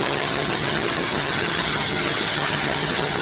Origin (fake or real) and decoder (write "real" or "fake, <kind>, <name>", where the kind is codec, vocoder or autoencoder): fake, vocoder, HiFi-GAN